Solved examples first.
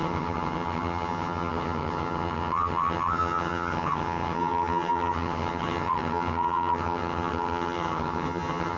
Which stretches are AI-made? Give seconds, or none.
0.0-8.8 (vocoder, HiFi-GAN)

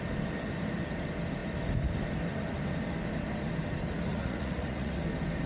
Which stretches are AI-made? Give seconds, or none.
4.1-5.0 (vocoder, Vocos)

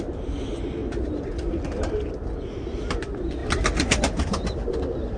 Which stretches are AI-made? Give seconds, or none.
none

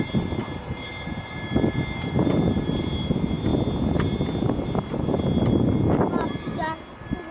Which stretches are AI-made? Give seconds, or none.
none

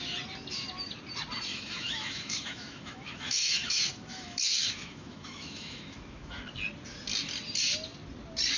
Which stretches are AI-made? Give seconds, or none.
1.5-6.4 (autoencoder, DAC-VAE)

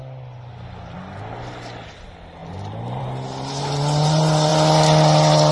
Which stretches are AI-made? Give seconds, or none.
none